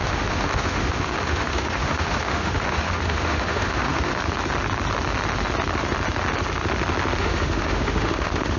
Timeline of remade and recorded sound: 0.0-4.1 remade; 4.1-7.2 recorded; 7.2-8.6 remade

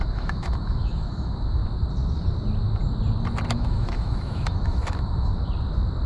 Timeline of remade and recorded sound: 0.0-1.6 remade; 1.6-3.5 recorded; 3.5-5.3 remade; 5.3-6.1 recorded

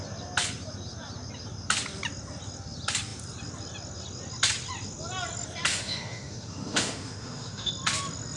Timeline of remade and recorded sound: 0.0-5.7 recorded; 5.7-7.7 remade; 7.7-8.4 recorded

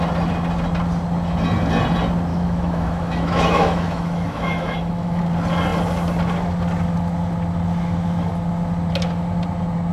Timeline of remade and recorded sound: 0.0-2.3 recorded; 2.3-5.2 remade; 5.2-9.9 recorded

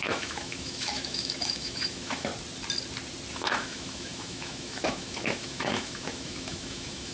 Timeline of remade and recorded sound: 0.0-2.3 remade; 2.3-3.3 recorded; 3.3-7.1 remade

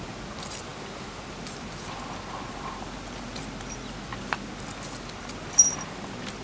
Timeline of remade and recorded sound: 0.0-6.4 recorded

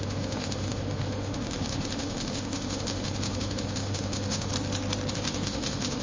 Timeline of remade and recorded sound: 0.0-4.5 remade; 4.5-5.1 recorded; 5.1-6.0 remade